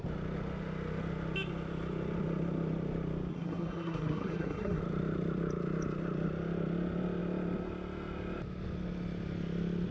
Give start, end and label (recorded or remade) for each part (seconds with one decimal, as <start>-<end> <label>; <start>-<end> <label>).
0.0-3.3 recorded; 3.3-4.8 remade; 4.8-9.9 recorded